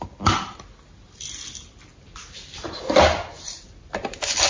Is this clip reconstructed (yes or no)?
no